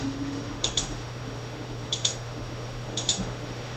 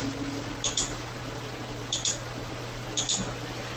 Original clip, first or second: second